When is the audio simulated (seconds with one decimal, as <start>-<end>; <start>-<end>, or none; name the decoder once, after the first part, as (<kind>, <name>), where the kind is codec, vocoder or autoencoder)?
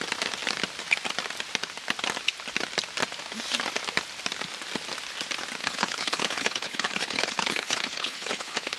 5.6-8.8 (codec, HILCodec)